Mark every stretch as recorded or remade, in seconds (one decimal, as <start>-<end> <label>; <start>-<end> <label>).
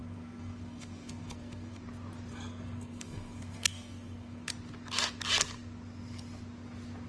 0.0-1.8 remade; 1.8-2.3 recorded; 2.3-4.5 remade; 4.5-7.1 recorded